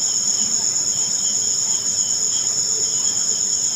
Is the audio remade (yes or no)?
no